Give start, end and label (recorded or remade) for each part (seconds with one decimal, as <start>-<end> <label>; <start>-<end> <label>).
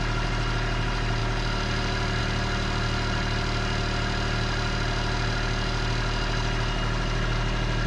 0.0-7.9 recorded